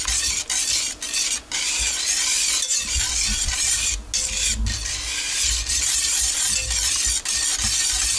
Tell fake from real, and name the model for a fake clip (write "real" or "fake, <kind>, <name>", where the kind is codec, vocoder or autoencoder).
real